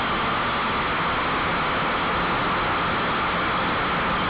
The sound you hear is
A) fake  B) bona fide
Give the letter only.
B